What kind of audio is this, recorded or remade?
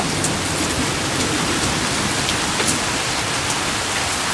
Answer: recorded